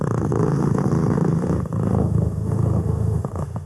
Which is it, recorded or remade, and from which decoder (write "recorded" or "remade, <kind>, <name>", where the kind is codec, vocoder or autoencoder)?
remade, autoencoder, DAC-VAE